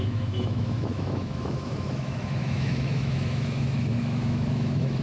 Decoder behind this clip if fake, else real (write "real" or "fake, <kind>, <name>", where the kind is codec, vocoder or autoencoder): fake, autoencoder, DAC-VAE